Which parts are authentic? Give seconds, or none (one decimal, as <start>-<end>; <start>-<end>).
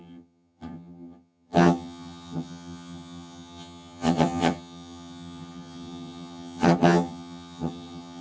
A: none